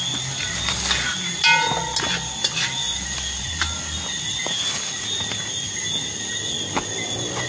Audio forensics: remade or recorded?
recorded